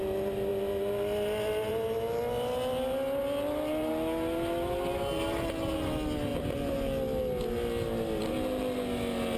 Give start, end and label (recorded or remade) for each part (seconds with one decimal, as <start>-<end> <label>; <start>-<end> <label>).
0.0-9.4 recorded